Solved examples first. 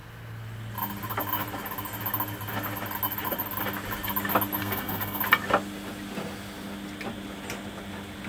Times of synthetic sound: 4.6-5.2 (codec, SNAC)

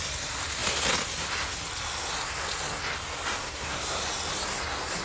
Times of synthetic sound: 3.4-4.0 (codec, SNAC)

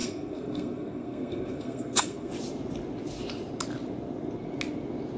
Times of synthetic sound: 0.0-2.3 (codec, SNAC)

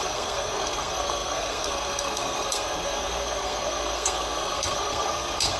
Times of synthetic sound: 0.0-5.6 (codec, SNAC)

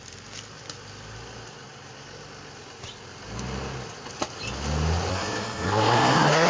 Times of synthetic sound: 5.1-6.5 (codec, SNAC)